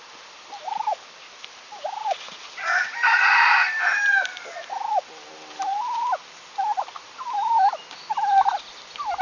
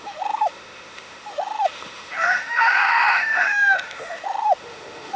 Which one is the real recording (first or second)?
first